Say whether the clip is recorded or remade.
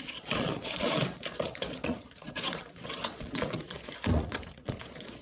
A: remade